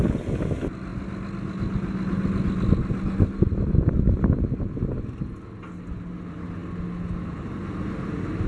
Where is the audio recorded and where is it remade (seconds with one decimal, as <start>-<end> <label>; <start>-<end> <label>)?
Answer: 0.0-8.5 recorded